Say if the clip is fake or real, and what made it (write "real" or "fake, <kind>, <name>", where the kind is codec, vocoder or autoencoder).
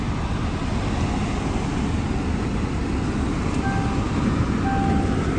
real